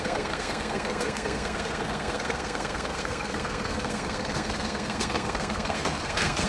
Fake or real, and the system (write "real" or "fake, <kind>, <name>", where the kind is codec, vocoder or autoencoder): fake, codec, SNAC